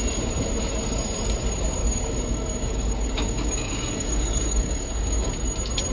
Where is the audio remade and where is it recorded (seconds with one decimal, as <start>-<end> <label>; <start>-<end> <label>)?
0.0-1.8 recorded; 1.8-5.3 remade; 5.3-5.9 recorded